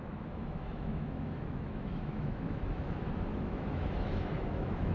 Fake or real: fake